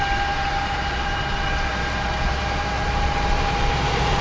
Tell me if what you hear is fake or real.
fake